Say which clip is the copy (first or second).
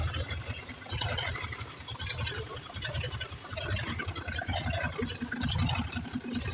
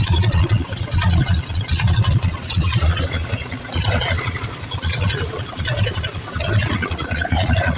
second